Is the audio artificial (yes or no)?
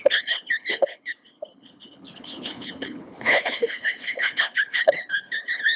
yes